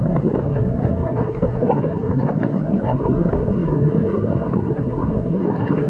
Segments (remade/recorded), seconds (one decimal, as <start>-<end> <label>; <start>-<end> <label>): 0.0-5.9 remade